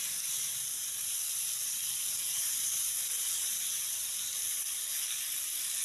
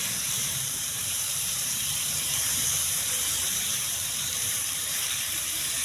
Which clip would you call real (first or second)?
first